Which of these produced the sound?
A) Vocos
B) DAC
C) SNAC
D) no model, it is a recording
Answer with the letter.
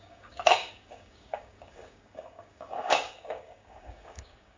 B